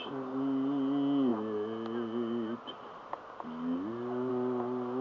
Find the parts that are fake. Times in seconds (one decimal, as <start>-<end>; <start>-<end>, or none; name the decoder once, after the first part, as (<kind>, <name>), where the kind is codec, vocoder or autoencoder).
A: none